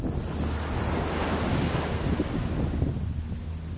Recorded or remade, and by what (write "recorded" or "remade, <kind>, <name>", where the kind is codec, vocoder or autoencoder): recorded